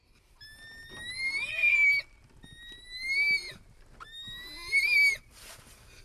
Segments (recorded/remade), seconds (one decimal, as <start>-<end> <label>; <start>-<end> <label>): 0.0-0.8 recorded; 0.8-1.5 remade; 1.5-6.0 recorded